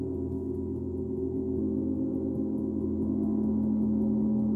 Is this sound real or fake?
real